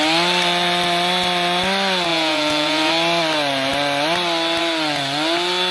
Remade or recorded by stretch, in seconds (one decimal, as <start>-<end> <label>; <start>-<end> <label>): 0.0-2.1 recorded; 2.1-2.9 remade; 2.9-5.7 recorded